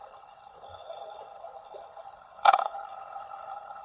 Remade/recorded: remade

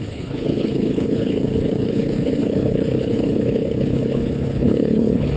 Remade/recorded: remade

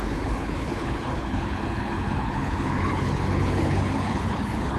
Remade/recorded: remade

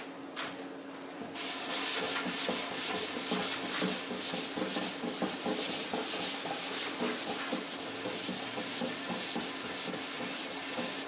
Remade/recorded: recorded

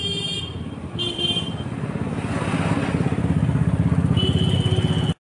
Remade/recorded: recorded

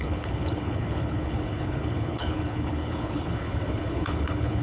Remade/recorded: remade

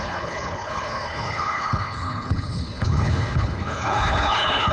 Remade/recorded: remade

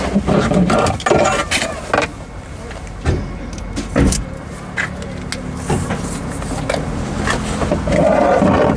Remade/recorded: recorded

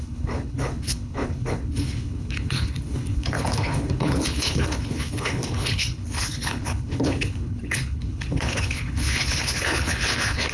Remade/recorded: remade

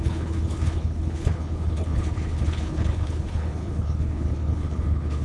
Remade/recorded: remade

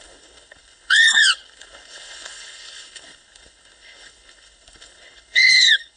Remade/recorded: remade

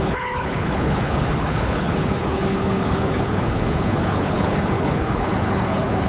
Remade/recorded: remade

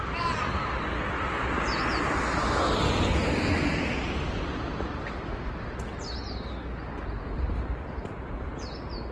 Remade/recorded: recorded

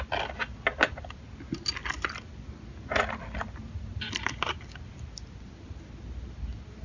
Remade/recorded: recorded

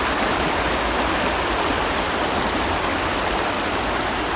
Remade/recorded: recorded